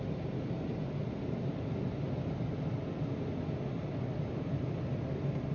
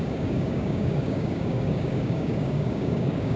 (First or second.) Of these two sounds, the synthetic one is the second